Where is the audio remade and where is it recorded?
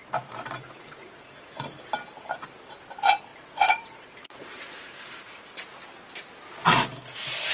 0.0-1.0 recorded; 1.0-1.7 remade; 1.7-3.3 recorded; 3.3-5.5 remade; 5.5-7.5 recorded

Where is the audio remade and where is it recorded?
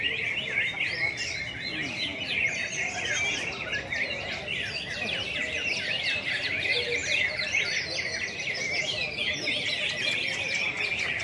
0.0-11.2 recorded